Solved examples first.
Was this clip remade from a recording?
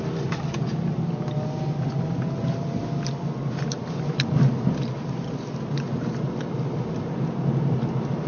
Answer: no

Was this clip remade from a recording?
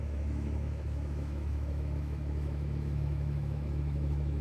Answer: yes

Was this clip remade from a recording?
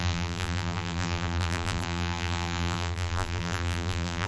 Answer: yes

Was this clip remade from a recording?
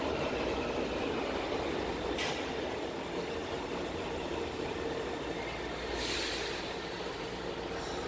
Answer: no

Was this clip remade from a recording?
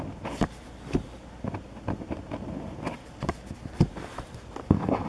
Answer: no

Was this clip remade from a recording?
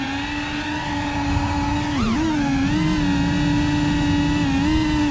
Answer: no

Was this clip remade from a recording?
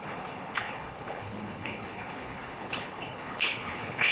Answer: yes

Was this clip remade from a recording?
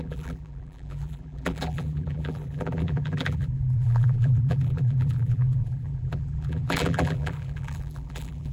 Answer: yes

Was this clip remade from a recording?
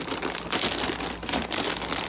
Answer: no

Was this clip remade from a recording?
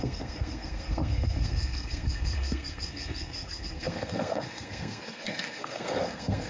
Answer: yes